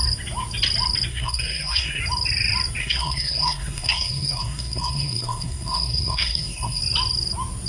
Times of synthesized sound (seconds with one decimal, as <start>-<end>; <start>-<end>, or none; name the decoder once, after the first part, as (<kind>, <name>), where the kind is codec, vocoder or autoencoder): 1.1-2.0 (codec, SNAC); 2.8-6.8